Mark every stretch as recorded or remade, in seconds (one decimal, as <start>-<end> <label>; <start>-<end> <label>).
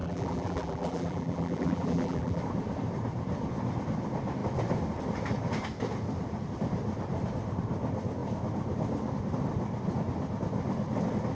0.0-2.4 remade; 2.4-11.3 recorded